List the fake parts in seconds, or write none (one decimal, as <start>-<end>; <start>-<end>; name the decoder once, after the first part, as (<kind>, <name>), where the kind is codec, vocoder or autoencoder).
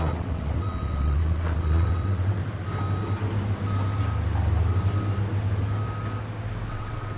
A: 0.0-2.4 (vocoder, WaveNeXt); 6.7-7.2